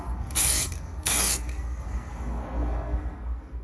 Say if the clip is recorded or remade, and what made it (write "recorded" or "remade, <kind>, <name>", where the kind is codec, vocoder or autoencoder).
remade, codec, SNAC